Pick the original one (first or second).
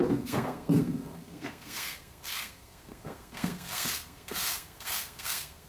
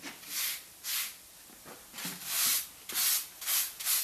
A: second